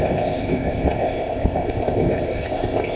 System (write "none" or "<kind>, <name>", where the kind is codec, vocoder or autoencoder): codec, ZipCodec